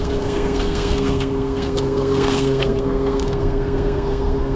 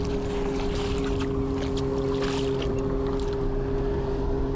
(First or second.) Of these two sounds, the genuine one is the second